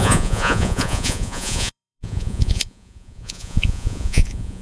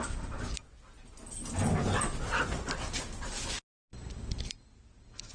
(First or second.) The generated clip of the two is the first